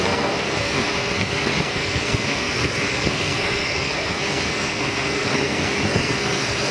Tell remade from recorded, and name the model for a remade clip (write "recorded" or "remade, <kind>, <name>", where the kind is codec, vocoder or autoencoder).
remade, codec, SNAC